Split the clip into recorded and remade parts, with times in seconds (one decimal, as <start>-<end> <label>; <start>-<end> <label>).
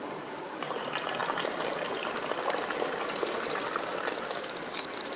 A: 0.0-5.2 recorded